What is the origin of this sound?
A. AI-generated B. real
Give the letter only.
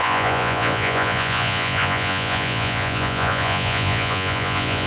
A